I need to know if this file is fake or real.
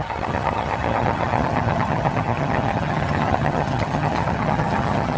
fake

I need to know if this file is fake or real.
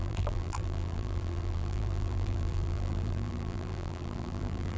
fake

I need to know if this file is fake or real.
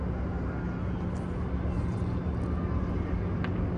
real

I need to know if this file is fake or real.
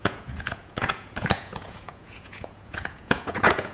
fake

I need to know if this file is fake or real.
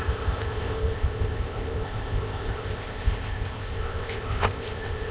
fake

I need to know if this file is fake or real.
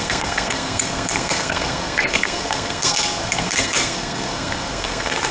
fake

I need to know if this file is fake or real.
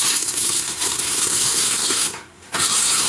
fake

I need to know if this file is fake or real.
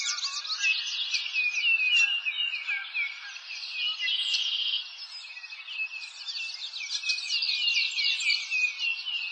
real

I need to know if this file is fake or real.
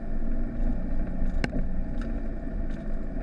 real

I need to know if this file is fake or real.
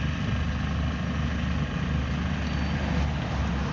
real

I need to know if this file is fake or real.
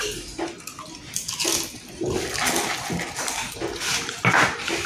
real